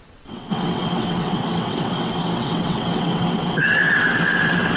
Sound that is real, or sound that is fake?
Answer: fake